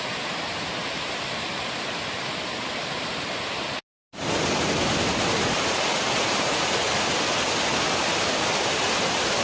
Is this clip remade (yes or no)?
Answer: no